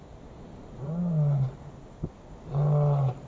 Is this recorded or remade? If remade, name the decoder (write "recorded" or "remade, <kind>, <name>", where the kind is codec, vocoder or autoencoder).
recorded